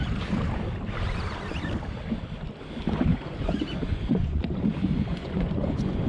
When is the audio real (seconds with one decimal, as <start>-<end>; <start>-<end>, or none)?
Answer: 0.0-3.1; 4.4-5.1